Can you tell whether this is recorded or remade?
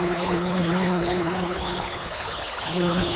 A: remade